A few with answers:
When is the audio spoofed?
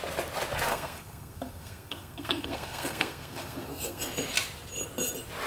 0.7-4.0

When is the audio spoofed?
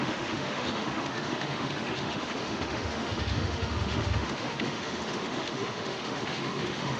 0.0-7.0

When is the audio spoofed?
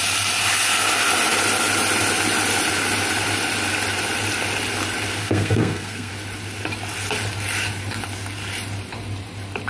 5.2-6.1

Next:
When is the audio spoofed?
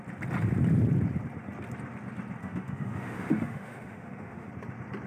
2.4-4.5